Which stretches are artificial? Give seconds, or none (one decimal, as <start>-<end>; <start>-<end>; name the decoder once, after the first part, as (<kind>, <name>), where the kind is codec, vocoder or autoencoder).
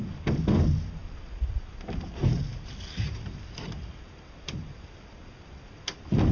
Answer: none